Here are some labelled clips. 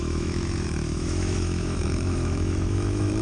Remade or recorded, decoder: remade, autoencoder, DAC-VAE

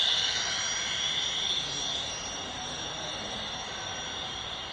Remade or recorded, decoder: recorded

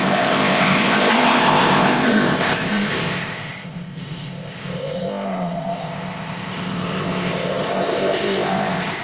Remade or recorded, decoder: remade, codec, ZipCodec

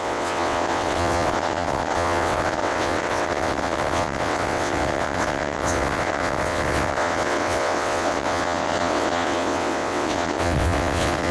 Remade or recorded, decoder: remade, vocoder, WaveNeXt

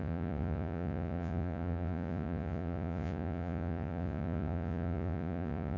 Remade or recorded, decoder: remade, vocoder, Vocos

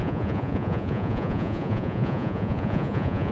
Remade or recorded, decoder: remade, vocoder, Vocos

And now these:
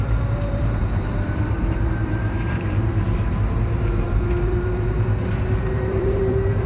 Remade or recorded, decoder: remade, vocoder, BigVGAN v2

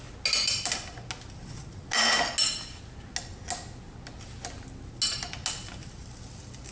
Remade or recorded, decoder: recorded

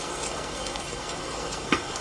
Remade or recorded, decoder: remade, codec, SNAC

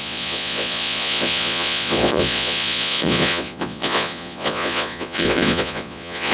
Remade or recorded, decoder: remade, vocoder, Vocos